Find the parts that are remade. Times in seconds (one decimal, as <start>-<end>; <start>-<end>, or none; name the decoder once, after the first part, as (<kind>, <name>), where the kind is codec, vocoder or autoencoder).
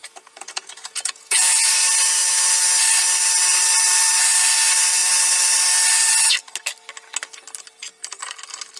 0.0-1.7 (vocoder, Vocos)